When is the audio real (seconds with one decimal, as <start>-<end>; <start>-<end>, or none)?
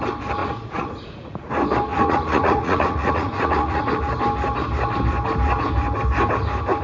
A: 0.0-0.4; 1.5-1.9; 4.0-6.8